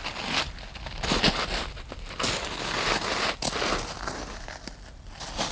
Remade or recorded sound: recorded